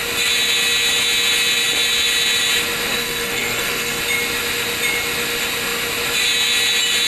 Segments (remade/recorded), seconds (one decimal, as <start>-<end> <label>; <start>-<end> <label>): 0.0-2.9 recorded; 2.9-4.0 remade; 4.0-7.1 recorded